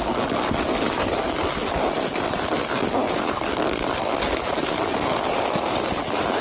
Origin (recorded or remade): recorded